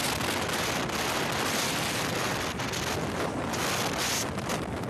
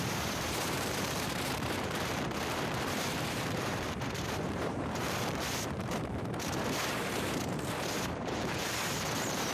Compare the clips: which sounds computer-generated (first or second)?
second